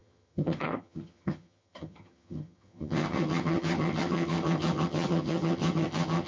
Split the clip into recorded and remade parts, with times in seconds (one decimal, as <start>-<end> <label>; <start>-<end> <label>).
0.0-6.3 remade